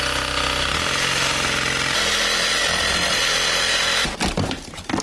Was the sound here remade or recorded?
recorded